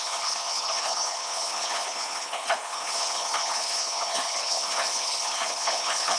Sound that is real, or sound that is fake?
fake